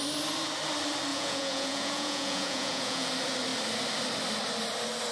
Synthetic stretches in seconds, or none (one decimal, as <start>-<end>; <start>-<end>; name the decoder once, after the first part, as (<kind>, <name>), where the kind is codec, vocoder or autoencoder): 1.1-3.1 (vocoder, Vocos)